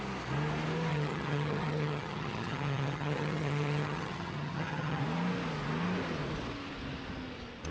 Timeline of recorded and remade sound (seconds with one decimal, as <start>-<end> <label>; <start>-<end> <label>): 0.0-0.9 recorded; 0.9-5.0 remade; 5.0-7.7 recorded

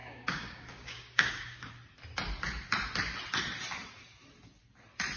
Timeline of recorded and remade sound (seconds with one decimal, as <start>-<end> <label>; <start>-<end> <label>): 0.0-1.7 remade; 1.7-5.2 recorded

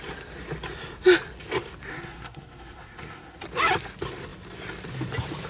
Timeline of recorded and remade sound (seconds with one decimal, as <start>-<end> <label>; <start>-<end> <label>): 0.0-1.9 recorded; 1.9-3.4 remade; 3.4-5.5 recorded

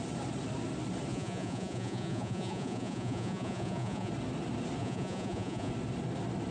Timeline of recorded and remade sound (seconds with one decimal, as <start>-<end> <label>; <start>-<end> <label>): 0.0-1.1 recorded; 1.1-4.1 remade; 4.1-4.8 recorded; 4.8-5.7 remade; 5.7-6.5 recorded